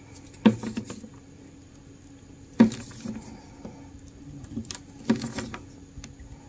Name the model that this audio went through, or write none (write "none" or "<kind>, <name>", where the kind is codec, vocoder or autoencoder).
none